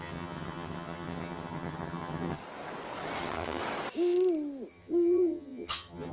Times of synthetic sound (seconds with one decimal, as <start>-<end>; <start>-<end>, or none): 0.0-2.4; 3.2-3.6; 4.7-6.1